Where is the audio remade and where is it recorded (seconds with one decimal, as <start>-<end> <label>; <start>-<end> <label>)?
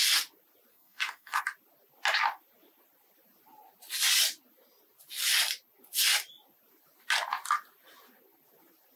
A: 0.0-0.7 recorded; 0.7-1.4 remade; 1.4-9.0 recorded